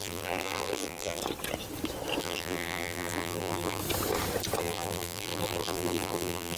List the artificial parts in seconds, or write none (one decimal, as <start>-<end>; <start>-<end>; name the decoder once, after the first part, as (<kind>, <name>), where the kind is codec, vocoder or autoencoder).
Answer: 0.0-1.2 (vocoder, BigVGAN v2); 2.2-3.8; 4.6-6.6